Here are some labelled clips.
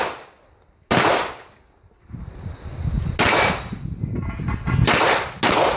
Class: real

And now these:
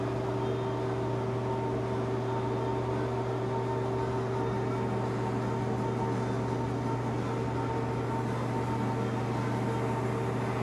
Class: real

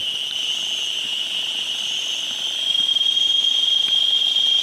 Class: real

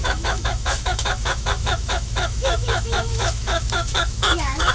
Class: fake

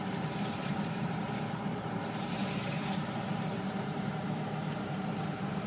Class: fake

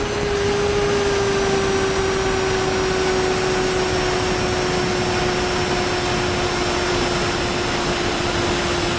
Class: real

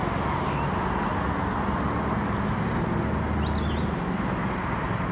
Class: real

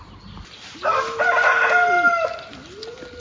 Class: real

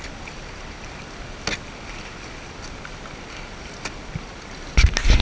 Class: real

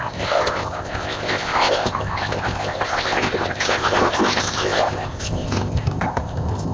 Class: fake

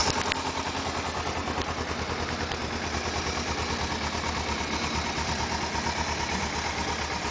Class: real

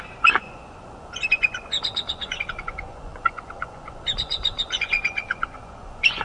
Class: fake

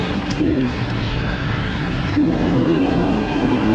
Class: fake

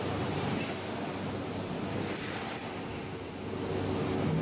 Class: real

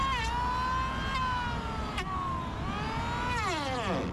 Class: real